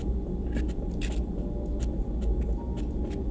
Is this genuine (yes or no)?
yes